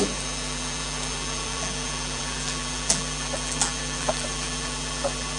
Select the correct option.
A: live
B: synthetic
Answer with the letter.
B